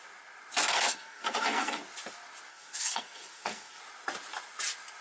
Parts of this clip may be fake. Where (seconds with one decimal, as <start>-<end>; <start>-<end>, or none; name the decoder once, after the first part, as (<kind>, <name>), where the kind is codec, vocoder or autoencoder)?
0.7-1.8 (codec, SNAC); 2.5-3.8